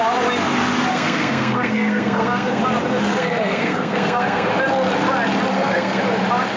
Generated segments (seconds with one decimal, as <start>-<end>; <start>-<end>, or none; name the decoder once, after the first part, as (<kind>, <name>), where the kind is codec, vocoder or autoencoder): 0.9-2.6 (codec, SNAC); 3.1-4.5; 5.5-6.0